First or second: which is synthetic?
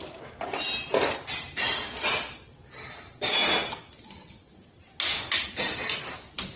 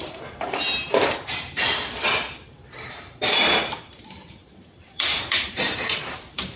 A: second